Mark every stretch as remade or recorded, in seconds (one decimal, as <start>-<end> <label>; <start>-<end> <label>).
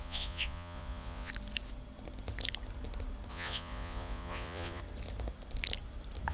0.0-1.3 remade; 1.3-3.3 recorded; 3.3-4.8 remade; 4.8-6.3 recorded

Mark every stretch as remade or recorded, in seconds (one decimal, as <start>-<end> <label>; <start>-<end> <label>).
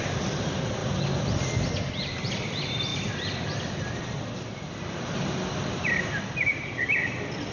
0.0-0.8 remade; 0.8-2.3 recorded; 2.3-7.5 remade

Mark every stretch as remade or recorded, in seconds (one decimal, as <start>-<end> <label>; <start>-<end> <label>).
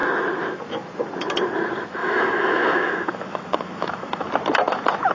0.0-2.0 recorded; 2.0-4.3 remade; 4.3-5.1 recorded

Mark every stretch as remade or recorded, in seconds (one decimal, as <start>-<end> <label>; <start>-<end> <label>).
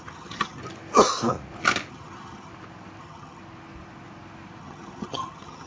0.0-0.6 remade; 0.6-1.9 recorded; 1.9-2.5 remade; 2.5-3.0 recorded; 3.0-3.4 remade; 3.4-4.6 recorded; 4.6-5.7 remade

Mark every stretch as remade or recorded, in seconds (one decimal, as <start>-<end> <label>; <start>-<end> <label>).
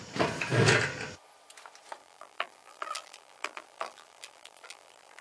0.0-2.0 recorded; 2.0-5.2 remade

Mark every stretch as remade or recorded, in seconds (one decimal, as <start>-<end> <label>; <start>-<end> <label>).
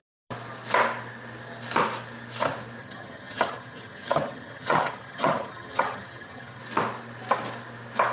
0.0-2.8 recorded; 2.8-6.6 remade; 6.6-8.1 recorded